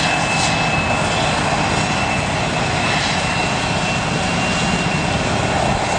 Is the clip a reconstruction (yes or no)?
no